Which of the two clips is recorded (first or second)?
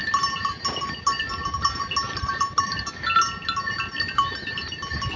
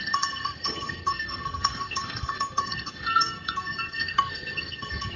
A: first